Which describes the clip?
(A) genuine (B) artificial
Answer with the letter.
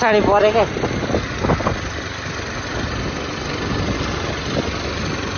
A